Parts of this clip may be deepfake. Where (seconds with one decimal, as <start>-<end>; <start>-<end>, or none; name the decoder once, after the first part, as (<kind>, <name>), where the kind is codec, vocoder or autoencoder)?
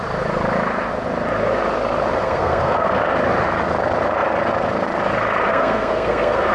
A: 2.2-3.0 (codec, SNAC); 5.5-6.5